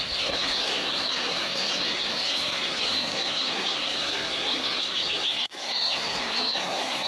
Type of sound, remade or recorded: remade